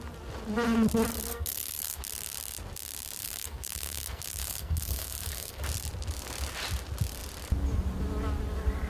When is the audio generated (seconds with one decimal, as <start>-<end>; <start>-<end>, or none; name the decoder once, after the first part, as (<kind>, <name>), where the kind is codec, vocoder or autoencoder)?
1.1-2.0 (codec, SNAC); 3.2-5.6